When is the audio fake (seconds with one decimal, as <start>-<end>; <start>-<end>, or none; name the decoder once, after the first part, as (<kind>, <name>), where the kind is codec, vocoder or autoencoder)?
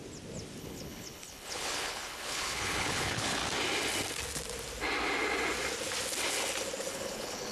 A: 0.6-3.4 (codec, HILCodec); 6.9-7.5